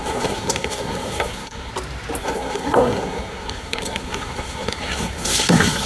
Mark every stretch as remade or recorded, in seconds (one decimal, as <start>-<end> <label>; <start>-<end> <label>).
0.0-1.7 remade; 1.7-2.2 recorded; 2.2-5.9 remade